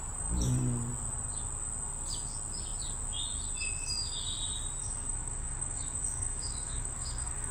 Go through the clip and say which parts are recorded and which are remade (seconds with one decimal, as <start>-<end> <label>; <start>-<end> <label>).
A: 0.0-4.8 recorded; 4.8-7.5 remade